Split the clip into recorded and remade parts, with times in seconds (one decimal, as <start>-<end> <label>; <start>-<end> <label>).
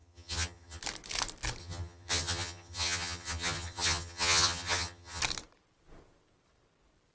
0.0-0.8 remade; 0.8-1.6 recorded; 1.6-5.2 remade; 5.2-7.1 recorded